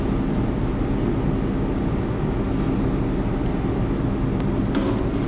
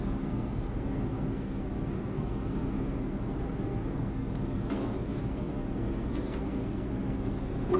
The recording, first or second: first